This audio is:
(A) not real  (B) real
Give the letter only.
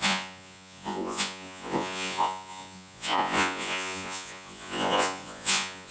A